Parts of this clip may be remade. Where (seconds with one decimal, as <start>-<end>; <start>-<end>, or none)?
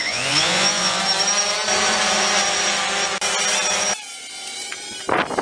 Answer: 0.0-1.0